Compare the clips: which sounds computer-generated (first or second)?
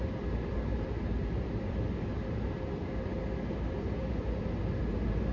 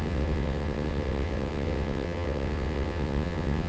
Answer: second